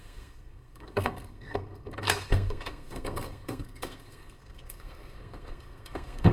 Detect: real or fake fake